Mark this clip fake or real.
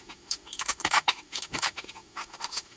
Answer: fake